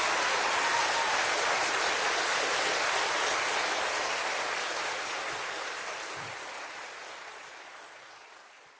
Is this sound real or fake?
real